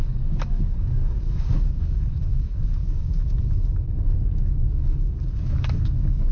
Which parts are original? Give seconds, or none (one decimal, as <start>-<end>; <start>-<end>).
none